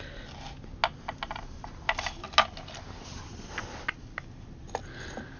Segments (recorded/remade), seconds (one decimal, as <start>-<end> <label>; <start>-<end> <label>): 0.0-5.4 recorded